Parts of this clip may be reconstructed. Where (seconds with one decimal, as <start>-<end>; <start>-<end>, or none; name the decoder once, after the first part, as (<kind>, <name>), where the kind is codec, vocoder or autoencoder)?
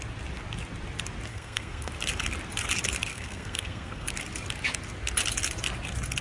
1.3-1.9 (codec, SNAC); 3.1-4.1